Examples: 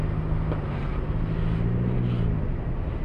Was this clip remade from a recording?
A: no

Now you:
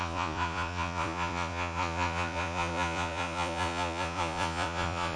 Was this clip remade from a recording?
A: yes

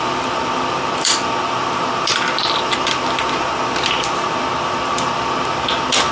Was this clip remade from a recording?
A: yes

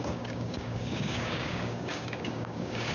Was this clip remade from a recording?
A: yes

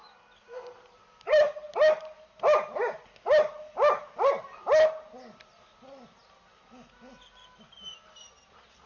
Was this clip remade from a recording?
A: no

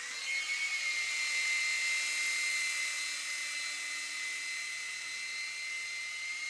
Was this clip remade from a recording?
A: no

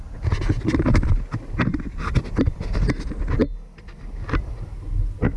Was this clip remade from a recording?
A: no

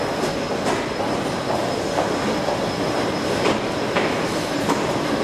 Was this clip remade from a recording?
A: no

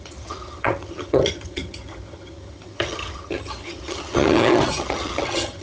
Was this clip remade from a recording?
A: yes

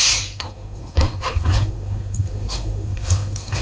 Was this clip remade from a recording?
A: yes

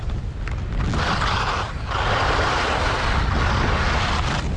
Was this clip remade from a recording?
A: no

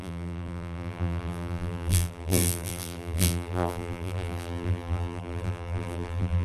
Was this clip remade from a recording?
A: yes